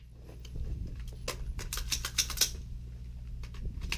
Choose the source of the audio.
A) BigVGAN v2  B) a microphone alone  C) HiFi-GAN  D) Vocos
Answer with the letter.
B